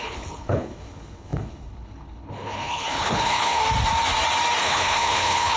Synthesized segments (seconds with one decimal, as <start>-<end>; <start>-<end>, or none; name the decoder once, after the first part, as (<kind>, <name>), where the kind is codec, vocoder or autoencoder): 0.0-3.6 (codec, HILCodec); 4.6-5.6